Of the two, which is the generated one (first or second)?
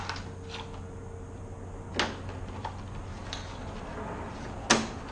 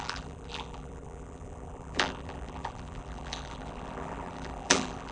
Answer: second